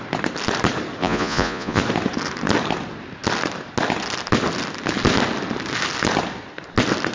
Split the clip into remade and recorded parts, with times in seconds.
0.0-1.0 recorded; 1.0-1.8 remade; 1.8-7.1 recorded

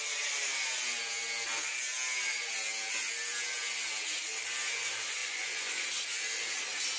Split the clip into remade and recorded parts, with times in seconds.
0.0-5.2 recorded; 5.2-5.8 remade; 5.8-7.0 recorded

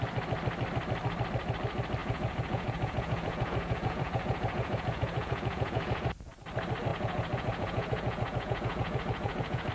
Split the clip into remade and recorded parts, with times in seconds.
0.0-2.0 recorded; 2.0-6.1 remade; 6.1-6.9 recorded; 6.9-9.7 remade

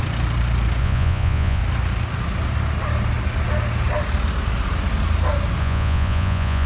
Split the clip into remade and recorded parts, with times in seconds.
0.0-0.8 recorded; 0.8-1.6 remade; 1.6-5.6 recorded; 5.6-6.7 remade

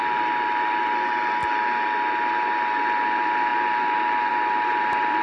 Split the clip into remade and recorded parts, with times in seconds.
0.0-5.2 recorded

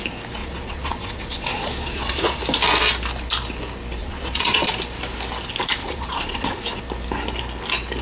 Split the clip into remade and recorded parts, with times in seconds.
0.0-0.4 recorded; 0.4-2.4 remade; 2.4-4.0 recorded; 4.0-4.6 remade; 4.6-5.8 recorded; 5.8-6.8 remade; 6.8-8.0 recorded

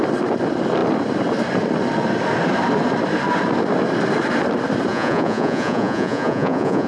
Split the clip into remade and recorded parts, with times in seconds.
0.0-4.9 recorded; 4.9-6.9 remade